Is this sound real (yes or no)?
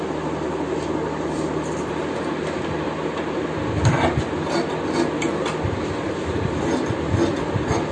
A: yes